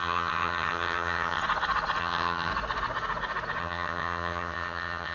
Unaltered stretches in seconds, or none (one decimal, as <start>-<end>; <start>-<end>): 1.4-2.0; 2.5-3.6